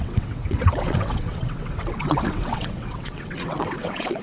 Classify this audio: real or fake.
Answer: fake